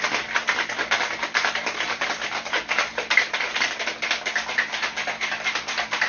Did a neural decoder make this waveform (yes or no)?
yes